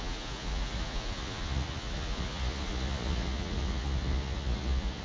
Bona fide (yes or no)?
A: no